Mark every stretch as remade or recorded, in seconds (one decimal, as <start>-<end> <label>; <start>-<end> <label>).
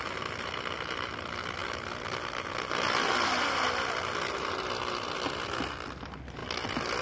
0.0-7.0 recorded